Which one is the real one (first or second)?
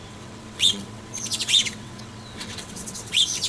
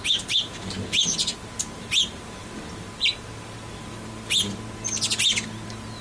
second